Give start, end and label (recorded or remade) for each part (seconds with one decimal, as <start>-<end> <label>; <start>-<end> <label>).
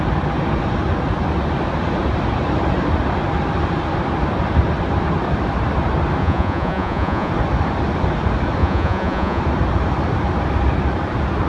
0.0-6.2 recorded; 6.2-7.3 remade; 7.3-8.6 recorded; 8.6-9.4 remade; 9.4-11.5 recorded